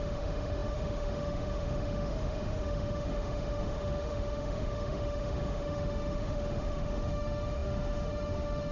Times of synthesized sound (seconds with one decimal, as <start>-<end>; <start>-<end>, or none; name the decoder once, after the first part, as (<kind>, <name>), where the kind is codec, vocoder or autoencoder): 0.0-8.7 (autoencoder, DAC-VAE)